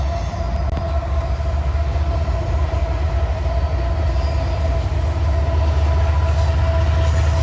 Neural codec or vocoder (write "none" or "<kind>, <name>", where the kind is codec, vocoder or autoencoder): none